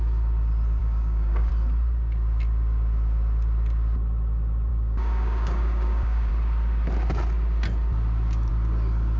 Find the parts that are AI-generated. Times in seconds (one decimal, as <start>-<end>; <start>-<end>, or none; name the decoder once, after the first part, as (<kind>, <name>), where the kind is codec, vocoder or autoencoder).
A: 0.8-1.5 (codec, DAC); 4.7-6.3